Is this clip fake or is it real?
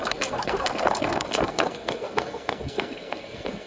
fake